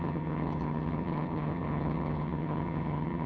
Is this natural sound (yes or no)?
no